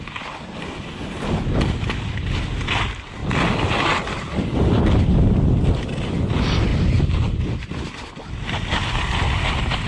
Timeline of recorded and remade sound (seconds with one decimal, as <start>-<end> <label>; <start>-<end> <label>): 0.0-6.7 recorded; 6.7-7.4 remade; 7.4-9.9 recorded